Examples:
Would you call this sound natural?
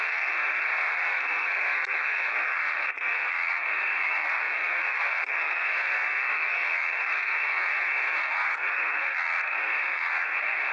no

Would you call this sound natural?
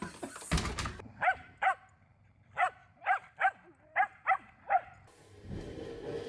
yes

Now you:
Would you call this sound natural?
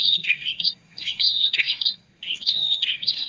no